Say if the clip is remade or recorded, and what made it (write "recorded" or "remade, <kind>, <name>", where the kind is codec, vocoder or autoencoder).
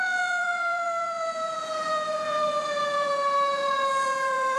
remade, vocoder, Vocos